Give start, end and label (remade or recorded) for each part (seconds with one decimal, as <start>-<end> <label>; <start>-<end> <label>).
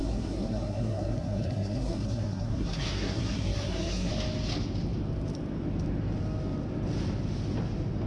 0.0-4.1 remade; 4.1-8.1 recorded